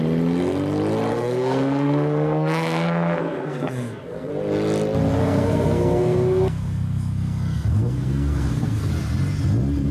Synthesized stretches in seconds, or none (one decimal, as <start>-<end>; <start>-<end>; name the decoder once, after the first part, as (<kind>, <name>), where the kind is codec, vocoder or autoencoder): 1.1-4.3 (codec, SNAC); 5.2-8.9